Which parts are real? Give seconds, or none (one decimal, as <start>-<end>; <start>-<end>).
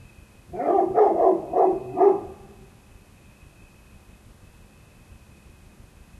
0.0-6.2